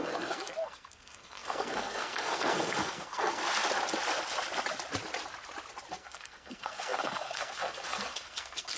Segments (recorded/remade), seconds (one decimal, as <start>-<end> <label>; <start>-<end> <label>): 0.0-3.4 remade; 3.4-5.9 recorded; 5.9-8.8 remade